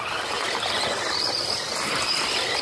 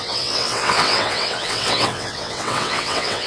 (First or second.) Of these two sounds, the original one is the first